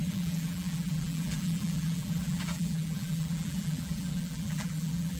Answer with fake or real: fake